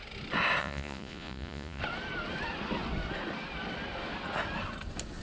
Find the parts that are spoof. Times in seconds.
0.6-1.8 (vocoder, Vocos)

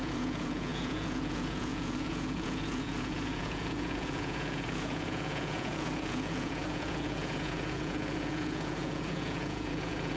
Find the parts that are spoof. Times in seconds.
0.0-10.2 (vocoder, Vocos)